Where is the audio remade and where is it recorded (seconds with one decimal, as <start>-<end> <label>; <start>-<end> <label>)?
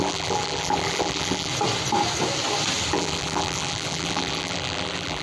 0.0-1.5 remade; 1.5-2.9 recorded; 2.9-5.2 remade